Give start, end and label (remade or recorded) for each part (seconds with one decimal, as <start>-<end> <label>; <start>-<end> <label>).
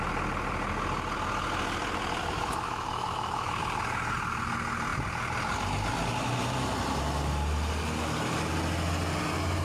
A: 0.0-2.2 recorded; 2.2-3.6 remade; 3.6-9.6 recorded